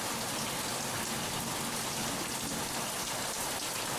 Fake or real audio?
real